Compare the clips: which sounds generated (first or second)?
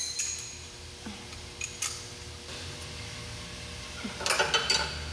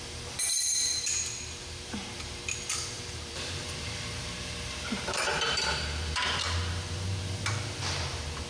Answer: second